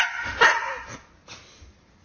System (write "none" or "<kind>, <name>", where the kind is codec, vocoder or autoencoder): none